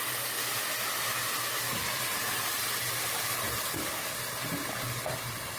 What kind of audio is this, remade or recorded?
recorded